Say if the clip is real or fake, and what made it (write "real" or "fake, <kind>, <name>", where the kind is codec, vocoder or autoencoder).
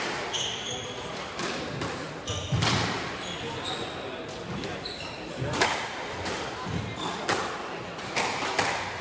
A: real